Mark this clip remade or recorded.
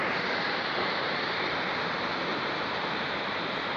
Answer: remade